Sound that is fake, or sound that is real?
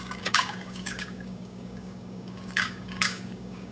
fake